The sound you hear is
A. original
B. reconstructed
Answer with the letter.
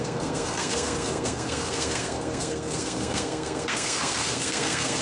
B